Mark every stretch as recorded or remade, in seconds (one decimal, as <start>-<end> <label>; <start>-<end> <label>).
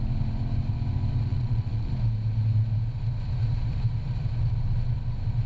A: 0.0-1.3 recorded; 1.3-1.9 remade; 1.9-5.5 recorded